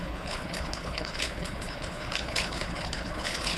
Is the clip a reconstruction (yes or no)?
yes